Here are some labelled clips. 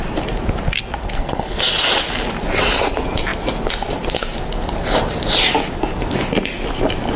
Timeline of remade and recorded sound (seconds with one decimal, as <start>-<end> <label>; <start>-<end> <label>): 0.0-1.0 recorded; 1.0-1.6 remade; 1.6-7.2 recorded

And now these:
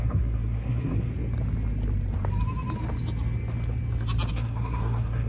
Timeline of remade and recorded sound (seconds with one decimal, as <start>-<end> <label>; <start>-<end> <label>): 0.0-1.1 remade; 1.1-4.3 recorded; 4.3-5.3 remade

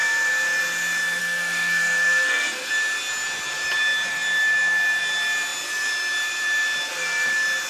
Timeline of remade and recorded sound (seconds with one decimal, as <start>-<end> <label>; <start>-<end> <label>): 0.0-1.2 recorded; 1.2-2.7 remade; 2.7-7.7 recorded

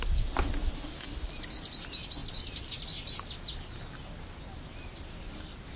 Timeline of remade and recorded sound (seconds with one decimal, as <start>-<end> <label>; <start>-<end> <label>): 0.0-5.8 recorded